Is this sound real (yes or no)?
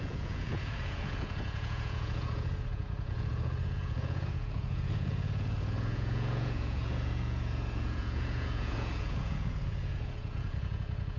no